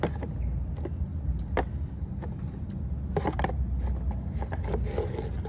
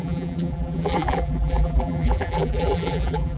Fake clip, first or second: second